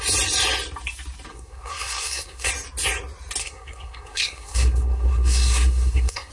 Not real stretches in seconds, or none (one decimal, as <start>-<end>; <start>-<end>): 1.3-2.5; 3.4-6.3